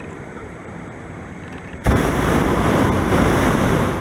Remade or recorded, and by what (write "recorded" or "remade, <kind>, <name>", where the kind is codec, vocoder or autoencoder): remade, vocoder, BigVGAN v2